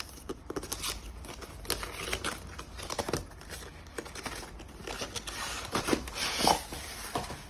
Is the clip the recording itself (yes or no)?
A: yes